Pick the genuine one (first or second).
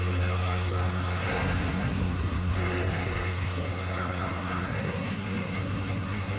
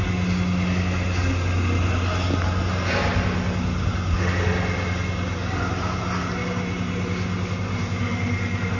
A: second